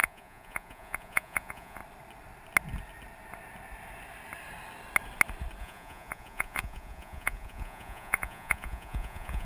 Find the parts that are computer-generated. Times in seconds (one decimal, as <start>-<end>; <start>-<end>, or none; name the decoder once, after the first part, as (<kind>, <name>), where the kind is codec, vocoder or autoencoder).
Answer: 0.0-1.8 (vocoder, Vocos); 5.6-9.4

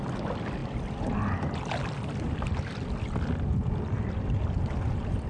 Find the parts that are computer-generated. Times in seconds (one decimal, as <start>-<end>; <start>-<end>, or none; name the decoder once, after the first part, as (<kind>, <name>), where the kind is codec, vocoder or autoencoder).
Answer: none